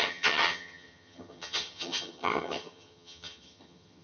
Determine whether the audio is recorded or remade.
remade